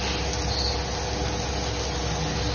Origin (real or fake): real